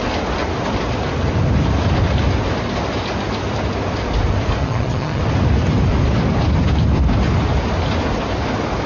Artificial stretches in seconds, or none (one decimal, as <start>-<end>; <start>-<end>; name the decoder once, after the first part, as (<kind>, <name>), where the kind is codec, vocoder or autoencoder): 4.6-5.2 (vocoder, HiFi-GAN)

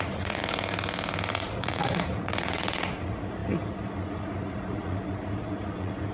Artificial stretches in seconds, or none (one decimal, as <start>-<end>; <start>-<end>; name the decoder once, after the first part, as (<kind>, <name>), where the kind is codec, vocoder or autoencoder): 0.0-0.4 (vocoder, Vocos); 1.3-6.1

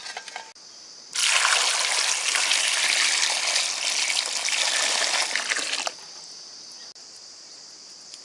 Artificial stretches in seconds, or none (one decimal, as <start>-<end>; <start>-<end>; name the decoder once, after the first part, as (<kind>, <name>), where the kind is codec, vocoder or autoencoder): none

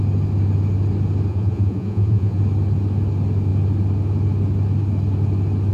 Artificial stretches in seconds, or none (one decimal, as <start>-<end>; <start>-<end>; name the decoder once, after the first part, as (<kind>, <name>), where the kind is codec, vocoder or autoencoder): 1.3-2.4 (vocoder, Vocos)

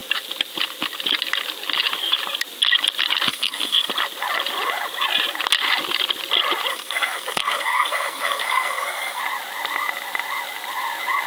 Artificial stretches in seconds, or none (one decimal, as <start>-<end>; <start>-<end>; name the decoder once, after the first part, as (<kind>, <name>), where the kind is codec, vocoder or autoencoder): 3.3-3.9 (codec, SNAC); 6.7-9.2

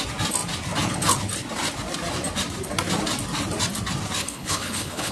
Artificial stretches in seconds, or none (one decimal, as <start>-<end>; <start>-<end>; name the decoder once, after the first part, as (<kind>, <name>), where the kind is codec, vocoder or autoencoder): 4.2-5.1 (codec, HILCodec)